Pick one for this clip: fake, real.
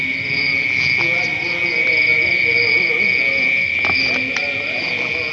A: real